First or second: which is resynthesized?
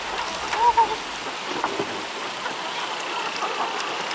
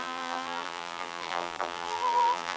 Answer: second